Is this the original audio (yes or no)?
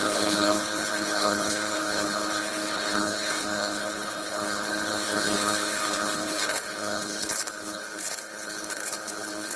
no